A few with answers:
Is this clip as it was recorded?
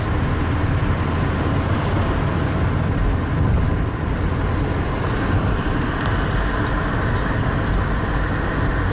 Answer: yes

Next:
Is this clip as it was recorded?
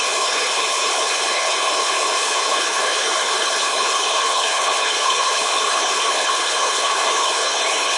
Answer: no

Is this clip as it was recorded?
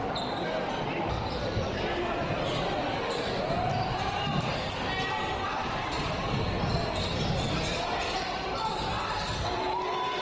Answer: yes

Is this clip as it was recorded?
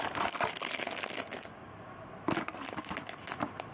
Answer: yes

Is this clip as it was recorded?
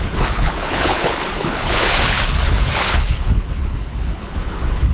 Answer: no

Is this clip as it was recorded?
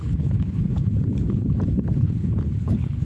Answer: no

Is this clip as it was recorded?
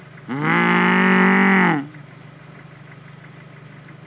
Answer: yes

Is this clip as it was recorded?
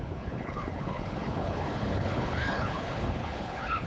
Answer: no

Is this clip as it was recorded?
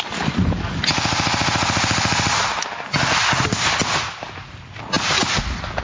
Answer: yes